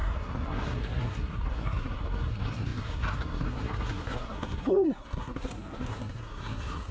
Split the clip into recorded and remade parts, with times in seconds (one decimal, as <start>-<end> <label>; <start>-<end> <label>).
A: 0.0-6.9 remade